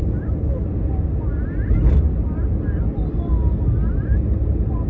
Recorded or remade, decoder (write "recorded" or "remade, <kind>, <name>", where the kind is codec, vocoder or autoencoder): recorded